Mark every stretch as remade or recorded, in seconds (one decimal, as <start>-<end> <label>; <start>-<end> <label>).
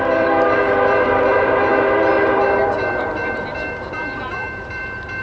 0.0-5.2 remade